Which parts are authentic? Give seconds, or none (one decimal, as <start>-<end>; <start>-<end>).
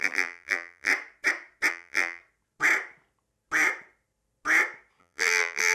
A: 0.9-1.7; 2.2-5.0